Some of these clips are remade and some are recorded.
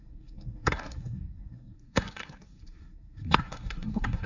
remade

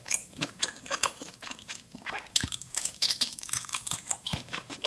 remade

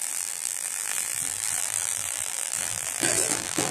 remade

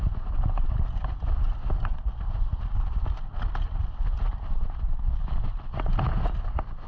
recorded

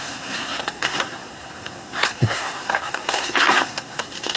remade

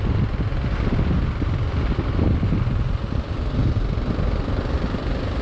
recorded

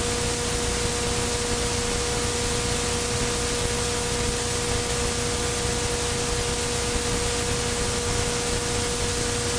recorded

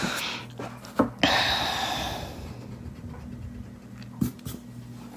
recorded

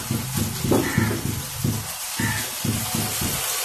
recorded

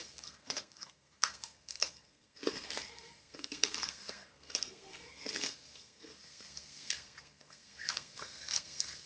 remade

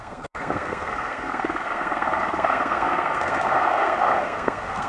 remade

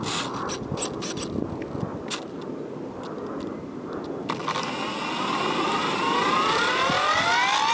recorded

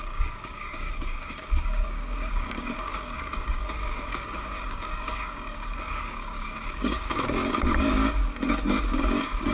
remade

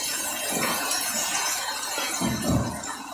remade